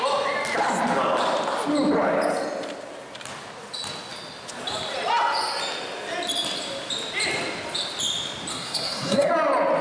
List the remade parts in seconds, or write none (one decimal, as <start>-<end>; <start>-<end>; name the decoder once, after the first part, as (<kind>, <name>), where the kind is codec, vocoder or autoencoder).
8.5-9.3 (codec, SNAC)